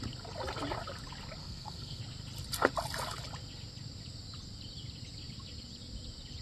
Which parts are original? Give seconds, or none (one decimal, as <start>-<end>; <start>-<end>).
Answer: 0.0-1.4; 2.0-6.4